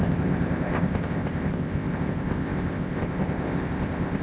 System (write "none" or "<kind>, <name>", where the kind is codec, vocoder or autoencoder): codec, ZipCodec